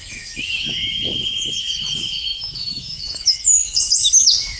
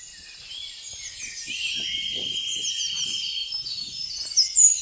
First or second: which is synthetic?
first